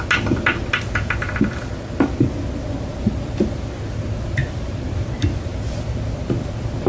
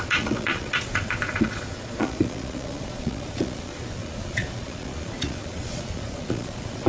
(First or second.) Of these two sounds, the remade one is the second